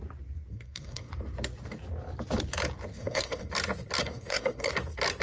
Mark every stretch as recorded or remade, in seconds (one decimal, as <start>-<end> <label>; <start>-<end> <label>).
0.0-0.5 recorded; 0.5-1.1 remade; 1.1-2.9 recorded; 2.9-3.5 remade; 3.5-4.0 recorded; 4.0-4.7 remade; 4.7-5.2 recorded